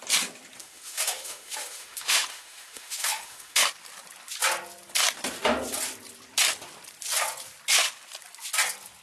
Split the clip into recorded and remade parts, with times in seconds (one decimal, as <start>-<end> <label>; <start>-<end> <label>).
0.0-0.6 recorded; 0.6-3.6 remade; 3.6-9.0 recorded